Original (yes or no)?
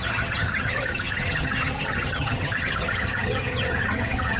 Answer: no